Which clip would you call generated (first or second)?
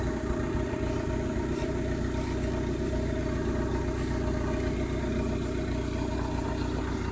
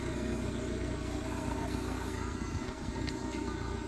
second